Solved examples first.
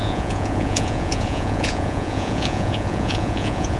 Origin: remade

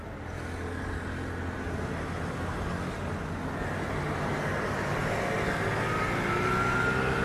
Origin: recorded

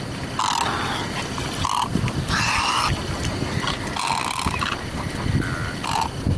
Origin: recorded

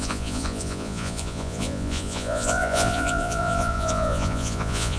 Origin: remade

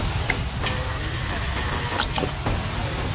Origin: recorded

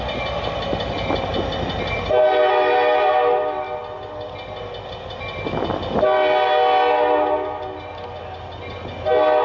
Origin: recorded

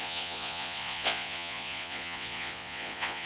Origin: remade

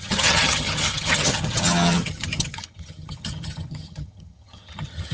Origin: remade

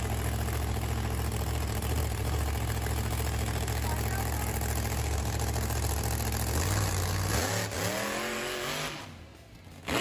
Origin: recorded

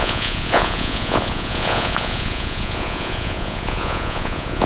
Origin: remade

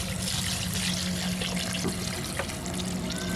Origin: recorded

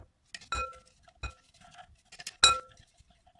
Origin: recorded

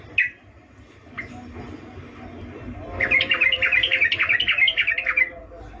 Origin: recorded